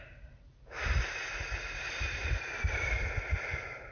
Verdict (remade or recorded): remade